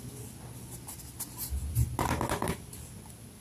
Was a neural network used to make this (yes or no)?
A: no